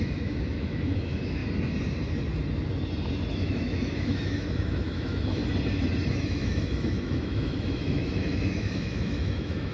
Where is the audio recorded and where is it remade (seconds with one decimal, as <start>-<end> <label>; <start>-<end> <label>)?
0.0-1.4 remade; 1.4-3.3 recorded; 3.3-5.4 remade; 5.4-6.1 recorded; 6.1-9.7 remade